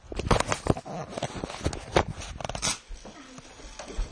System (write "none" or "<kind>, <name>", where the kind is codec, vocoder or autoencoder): none